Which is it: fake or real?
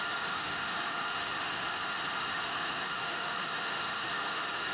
fake